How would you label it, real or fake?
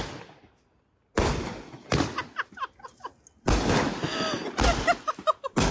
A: real